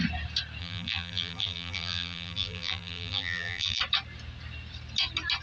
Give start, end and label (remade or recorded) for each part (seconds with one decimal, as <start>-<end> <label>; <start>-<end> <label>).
0.0-0.6 recorded; 0.6-3.8 remade; 3.8-5.4 recorded